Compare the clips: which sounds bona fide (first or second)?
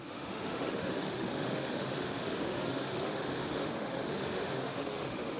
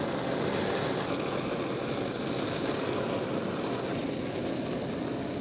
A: second